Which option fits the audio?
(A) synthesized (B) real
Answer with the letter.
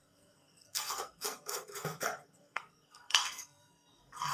A